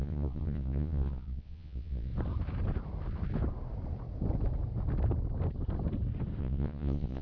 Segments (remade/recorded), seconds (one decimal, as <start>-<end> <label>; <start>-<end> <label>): 0.0-2.1 remade; 2.1-6.4 recorded; 6.4-7.2 remade